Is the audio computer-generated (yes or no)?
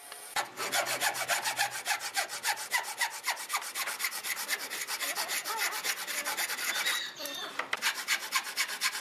no